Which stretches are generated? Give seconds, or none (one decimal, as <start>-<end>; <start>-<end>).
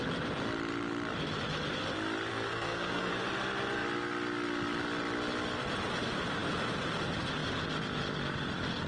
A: 2.3-3.1